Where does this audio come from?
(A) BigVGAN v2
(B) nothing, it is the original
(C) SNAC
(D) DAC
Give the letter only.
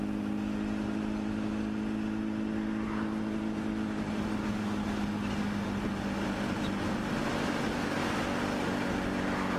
B